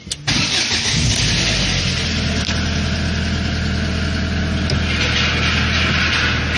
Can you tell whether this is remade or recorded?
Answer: recorded